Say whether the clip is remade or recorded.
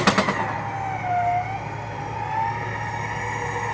recorded